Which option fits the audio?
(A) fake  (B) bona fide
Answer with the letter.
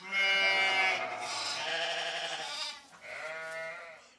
B